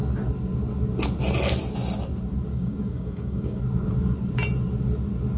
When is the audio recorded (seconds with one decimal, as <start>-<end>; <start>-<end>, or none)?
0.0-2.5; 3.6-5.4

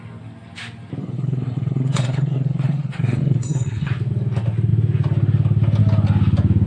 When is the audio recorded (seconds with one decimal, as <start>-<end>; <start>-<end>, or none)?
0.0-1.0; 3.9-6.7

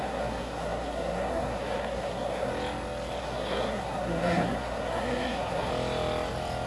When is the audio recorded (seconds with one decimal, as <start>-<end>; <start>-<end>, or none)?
2.5-3.2; 5.7-6.7

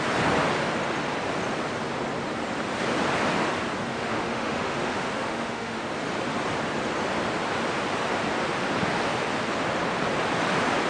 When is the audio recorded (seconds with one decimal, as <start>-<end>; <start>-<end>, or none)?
0.0-3.9; 5.9-10.9

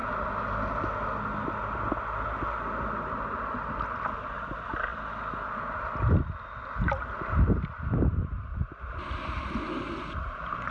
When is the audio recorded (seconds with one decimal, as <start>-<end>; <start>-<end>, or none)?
0.0-10.7